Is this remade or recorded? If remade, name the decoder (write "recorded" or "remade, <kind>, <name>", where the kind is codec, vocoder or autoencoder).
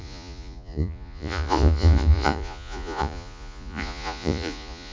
remade, vocoder, Vocos